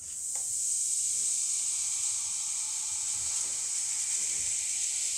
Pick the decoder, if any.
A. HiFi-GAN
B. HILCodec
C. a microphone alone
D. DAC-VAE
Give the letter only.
C